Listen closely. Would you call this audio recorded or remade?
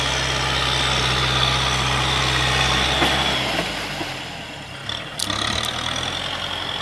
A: recorded